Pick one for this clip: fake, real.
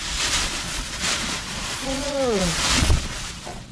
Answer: fake